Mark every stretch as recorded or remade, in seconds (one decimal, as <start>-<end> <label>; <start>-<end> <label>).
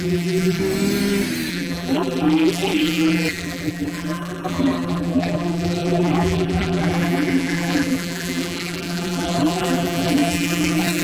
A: 0.0-0.6 remade; 0.6-1.5 recorded; 1.5-11.0 remade